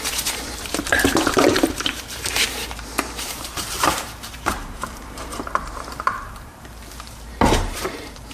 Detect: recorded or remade remade